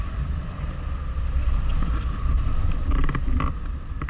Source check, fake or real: real